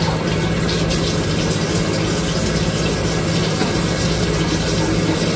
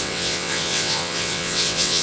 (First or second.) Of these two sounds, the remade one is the second